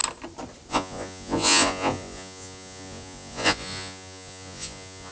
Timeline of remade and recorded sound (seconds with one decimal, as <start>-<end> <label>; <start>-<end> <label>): 0.0-0.7 recorded; 0.7-5.1 remade

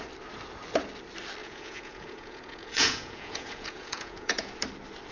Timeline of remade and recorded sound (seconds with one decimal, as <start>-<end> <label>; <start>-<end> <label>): 0.0-1.4 recorded; 1.4-4.5 remade; 4.5-5.1 recorded

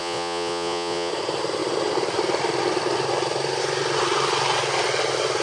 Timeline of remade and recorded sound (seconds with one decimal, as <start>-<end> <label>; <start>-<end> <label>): 0.0-1.1 remade; 1.1-5.4 recorded

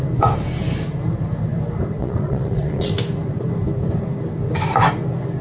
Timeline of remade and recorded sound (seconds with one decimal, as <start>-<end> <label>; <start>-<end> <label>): 0.0-2.0 recorded; 2.0-2.9 remade; 2.9-5.4 recorded

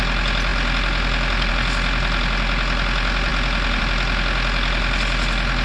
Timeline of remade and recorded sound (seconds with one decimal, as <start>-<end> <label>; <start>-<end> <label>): 0.0-5.6 recorded